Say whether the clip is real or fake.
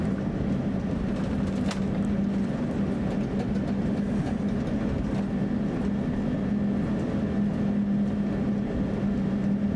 real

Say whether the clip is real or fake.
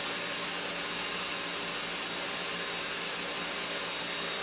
real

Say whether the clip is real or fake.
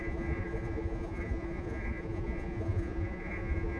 fake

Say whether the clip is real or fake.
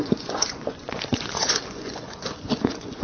fake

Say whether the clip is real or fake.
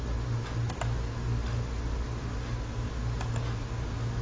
real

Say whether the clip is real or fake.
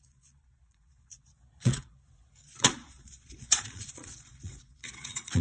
fake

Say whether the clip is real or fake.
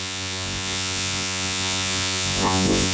fake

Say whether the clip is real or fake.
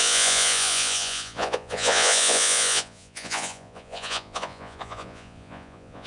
fake